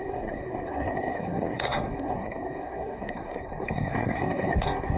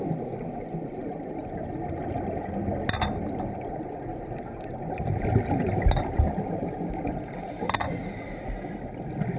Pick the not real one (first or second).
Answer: first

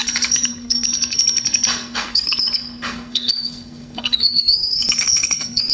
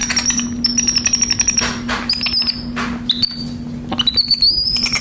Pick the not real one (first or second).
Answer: first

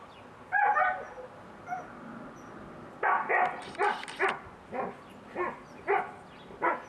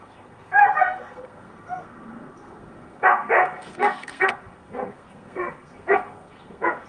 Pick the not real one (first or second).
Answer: second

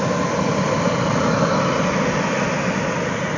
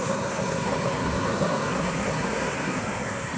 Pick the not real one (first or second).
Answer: second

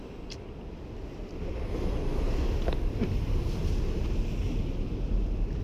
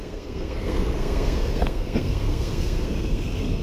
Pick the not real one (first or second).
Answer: second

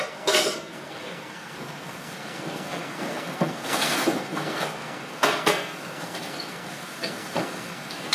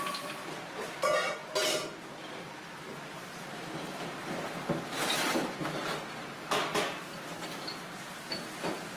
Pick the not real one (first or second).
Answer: first